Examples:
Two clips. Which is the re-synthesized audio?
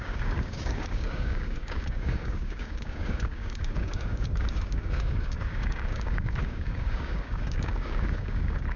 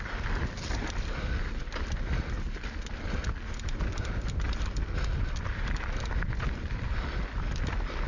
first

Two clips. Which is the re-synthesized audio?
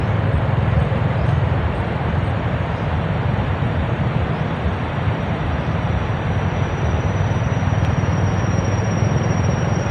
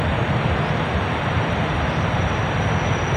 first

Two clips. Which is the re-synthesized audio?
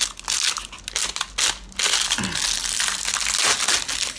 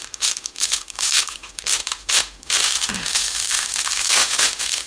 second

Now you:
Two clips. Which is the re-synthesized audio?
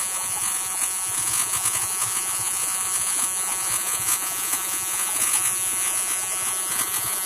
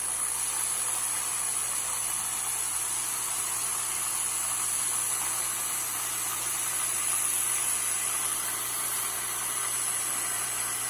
first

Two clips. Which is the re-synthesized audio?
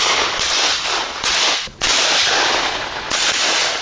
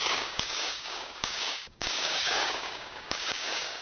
second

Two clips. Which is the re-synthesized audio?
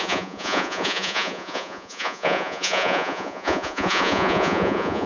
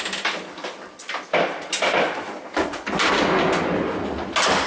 first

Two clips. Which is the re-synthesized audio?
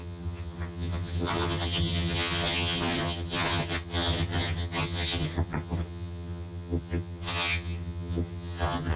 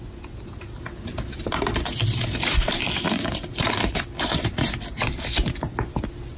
first